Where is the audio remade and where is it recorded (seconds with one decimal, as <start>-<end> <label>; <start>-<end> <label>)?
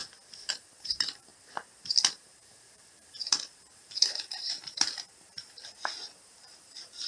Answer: 0.0-0.5 recorded; 0.5-1.3 remade; 1.3-2.1 recorded; 2.1-7.1 remade